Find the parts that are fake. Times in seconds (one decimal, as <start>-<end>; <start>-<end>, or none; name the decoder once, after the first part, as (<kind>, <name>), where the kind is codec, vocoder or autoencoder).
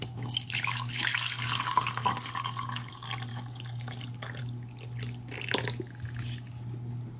0.0-2.9 (codec, DAC); 3.3-4.4